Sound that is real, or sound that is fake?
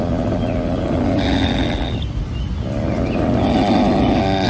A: real